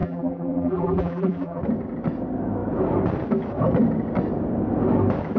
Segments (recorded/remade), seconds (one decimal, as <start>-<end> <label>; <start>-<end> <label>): 0.0-1.6 remade; 1.6-5.4 recorded